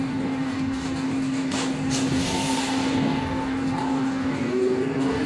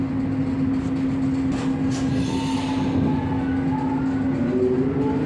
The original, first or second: second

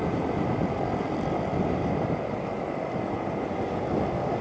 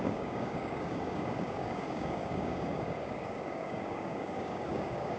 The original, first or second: first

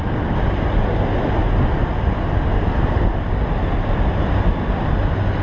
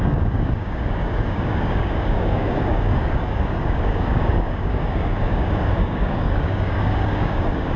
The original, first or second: first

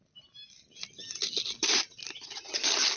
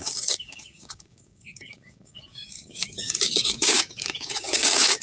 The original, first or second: first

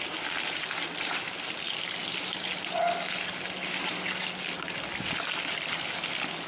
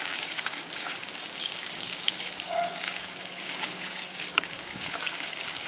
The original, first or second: first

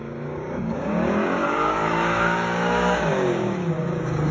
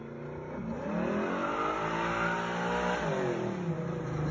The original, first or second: second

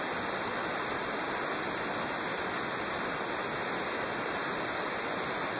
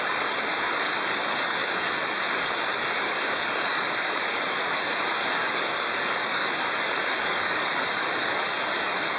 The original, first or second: first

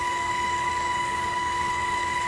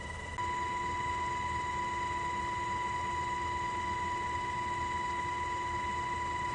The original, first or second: second